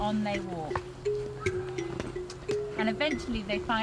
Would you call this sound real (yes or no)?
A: yes